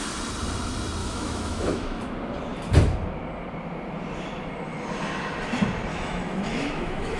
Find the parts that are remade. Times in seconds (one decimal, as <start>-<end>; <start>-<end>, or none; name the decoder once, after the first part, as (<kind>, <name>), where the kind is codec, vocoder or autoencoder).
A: 1.0-2.0 (autoencoder, DAC-VAE); 5.9-7.2